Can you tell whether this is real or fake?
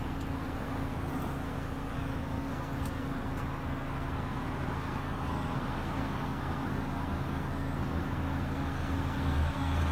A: fake